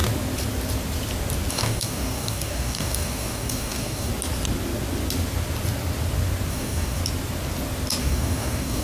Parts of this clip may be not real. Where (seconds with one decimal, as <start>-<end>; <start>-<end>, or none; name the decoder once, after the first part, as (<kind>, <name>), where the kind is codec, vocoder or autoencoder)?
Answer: 1.5-4.1 (codec, DAC); 6.5-7.0; 8.0-8.8